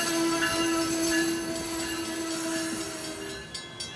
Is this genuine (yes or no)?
yes